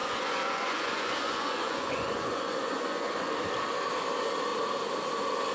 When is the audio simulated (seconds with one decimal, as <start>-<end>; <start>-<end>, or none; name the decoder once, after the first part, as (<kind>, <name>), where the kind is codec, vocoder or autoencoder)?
0.0-3.3 (vocoder, Vocos)